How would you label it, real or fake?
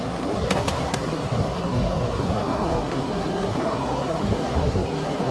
fake